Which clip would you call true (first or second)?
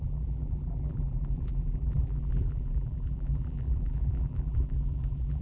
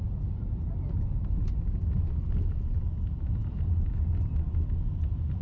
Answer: second